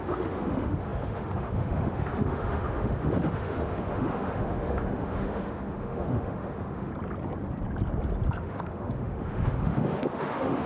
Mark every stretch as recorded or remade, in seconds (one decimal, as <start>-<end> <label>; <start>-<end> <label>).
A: 0.0-6.9 remade; 6.9-8.4 recorded; 8.4-10.7 remade

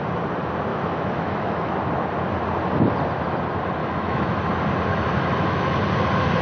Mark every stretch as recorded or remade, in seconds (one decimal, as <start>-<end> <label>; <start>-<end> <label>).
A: 0.0-0.7 recorded; 0.7-1.7 remade; 1.7-3.8 recorded; 3.8-4.4 remade; 4.4-4.9 recorded; 4.9-5.8 remade; 5.8-6.4 recorded

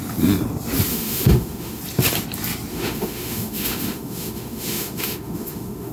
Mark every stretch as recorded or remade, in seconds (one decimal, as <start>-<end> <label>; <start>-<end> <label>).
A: 0.0-0.9 recorded; 0.9-1.8 remade; 1.8-2.7 recorded; 2.7-5.9 remade

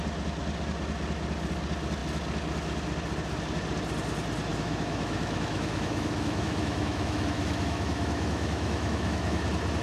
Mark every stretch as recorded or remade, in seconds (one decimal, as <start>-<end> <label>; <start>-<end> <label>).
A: 0.0-4.5 recorded; 4.5-9.4 remade; 9.4-9.8 recorded

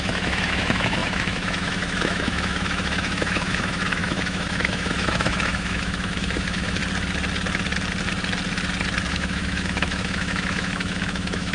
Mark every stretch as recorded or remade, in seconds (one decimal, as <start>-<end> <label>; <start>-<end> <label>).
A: 0.0-6.8 remade; 6.8-9.1 recorded; 9.1-11.5 remade

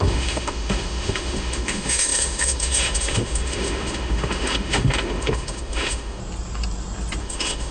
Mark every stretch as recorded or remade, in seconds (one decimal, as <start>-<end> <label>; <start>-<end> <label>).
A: 0.0-6.2 remade; 6.2-7.2 recorded; 7.2-7.7 remade

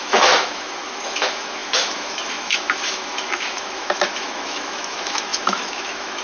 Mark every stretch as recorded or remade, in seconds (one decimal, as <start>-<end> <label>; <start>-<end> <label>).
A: 0.0-6.2 remade

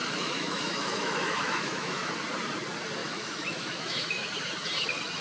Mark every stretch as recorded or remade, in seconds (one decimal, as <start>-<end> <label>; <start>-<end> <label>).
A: 0.0-2.1 remade; 2.1-3.0 recorded; 3.0-4.3 remade; 4.3-5.2 recorded